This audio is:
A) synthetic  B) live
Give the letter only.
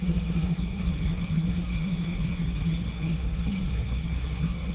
A